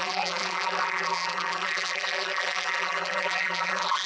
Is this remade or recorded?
remade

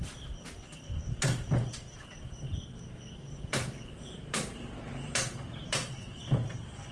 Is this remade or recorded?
remade